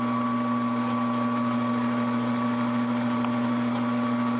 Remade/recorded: recorded